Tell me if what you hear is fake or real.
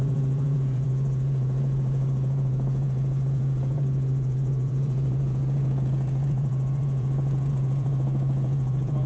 fake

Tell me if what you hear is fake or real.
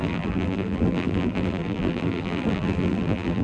fake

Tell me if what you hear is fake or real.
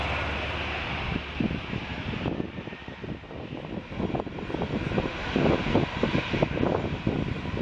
real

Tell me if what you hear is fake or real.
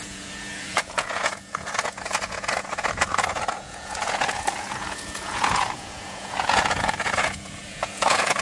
fake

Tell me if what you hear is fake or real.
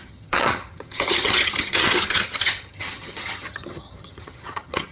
fake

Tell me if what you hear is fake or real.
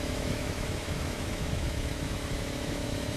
fake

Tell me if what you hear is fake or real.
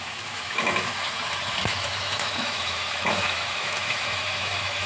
fake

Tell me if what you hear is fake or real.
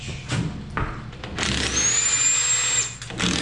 real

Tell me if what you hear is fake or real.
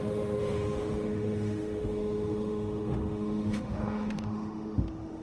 fake